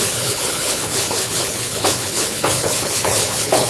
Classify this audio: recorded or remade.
remade